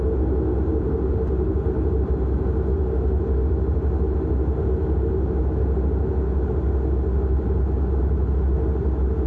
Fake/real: real